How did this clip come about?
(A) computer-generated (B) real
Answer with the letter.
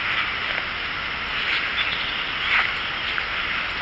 B